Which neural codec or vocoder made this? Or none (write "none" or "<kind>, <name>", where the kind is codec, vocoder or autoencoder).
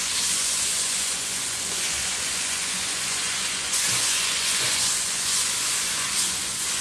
vocoder, Vocos